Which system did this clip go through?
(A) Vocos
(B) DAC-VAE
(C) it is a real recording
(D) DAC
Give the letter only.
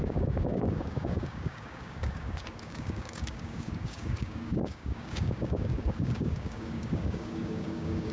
D